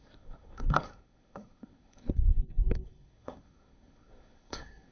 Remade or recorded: remade